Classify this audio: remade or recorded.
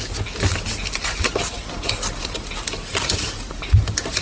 recorded